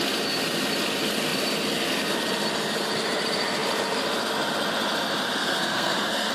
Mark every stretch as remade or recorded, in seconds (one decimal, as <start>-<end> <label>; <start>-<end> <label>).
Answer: 0.0-5.4 recorded; 5.4-6.3 remade

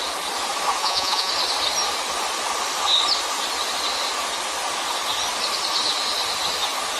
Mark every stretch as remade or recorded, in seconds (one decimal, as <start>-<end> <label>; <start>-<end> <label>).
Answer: 0.0-0.8 recorded; 0.8-1.3 remade; 1.3-7.0 recorded

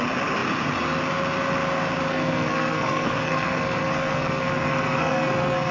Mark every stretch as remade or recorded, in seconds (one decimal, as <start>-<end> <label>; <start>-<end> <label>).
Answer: 0.0-2.1 recorded; 2.1-5.7 remade

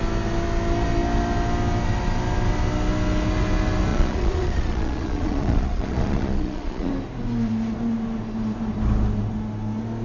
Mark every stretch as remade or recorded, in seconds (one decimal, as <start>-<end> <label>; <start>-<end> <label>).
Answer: 0.0-3.9 recorded; 3.9-6.9 remade; 6.9-10.0 recorded

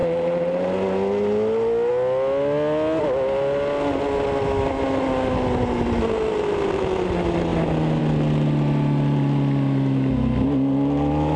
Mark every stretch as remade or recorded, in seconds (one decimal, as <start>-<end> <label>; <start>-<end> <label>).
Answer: 0.0-11.4 recorded

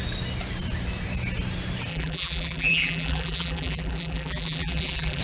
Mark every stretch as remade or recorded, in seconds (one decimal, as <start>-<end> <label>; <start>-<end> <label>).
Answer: 0.0-1.9 recorded; 1.9-5.2 remade

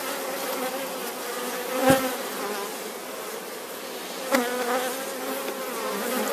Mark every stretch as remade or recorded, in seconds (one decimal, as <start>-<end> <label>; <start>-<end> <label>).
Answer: 0.0-6.3 recorded

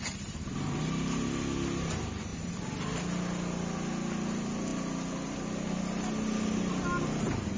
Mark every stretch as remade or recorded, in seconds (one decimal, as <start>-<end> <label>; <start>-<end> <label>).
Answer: 0.0-7.6 recorded